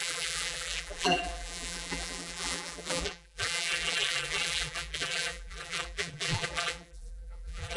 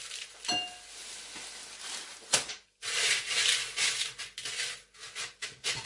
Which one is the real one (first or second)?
second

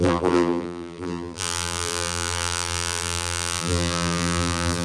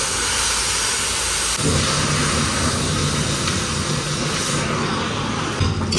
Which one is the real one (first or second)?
second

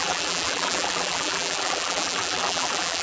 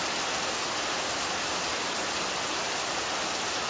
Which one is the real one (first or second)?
second